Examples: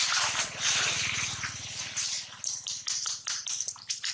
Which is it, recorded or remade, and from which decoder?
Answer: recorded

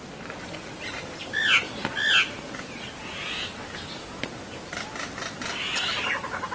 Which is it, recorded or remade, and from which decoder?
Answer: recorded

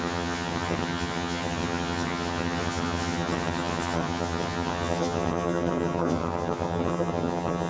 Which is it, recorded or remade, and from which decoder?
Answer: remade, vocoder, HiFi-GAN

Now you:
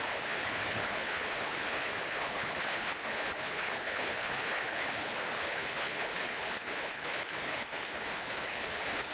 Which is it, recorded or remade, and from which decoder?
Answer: remade, codec, HILCodec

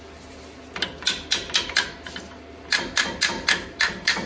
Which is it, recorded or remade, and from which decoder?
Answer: recorded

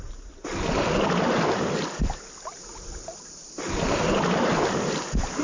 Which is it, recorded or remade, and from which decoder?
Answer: recorded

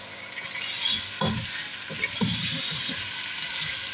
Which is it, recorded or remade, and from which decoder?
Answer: recorded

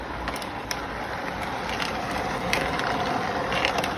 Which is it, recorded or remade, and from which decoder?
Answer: remade, vocoder, BigVGAN v2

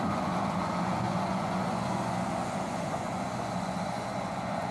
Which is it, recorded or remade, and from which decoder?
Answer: remade, vocoder, Vocos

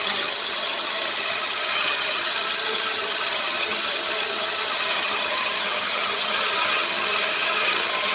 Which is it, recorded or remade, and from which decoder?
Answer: remade, vocoder, HiFi-GAN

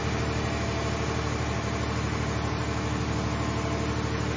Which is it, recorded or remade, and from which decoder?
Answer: recorded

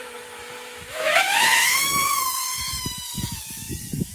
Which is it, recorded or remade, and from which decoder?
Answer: remade, autoencoder, DAC-VAE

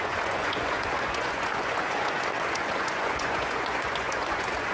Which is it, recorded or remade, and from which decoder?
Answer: remade, vocoder, Vocos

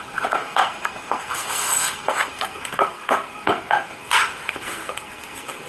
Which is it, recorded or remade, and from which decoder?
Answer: remade, codec, SNAC